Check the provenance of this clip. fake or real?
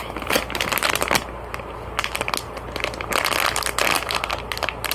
real